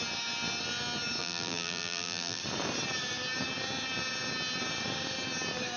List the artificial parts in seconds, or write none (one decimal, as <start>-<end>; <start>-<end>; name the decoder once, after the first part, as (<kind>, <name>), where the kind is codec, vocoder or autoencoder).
1.2-2.4 (vocoder, BigVGAN v2)